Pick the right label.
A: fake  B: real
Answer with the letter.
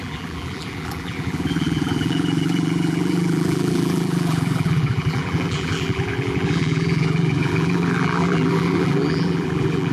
A